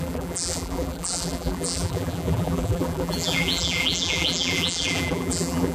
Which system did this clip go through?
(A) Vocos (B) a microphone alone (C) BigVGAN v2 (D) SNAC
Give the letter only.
C